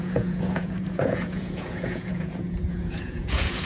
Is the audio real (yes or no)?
no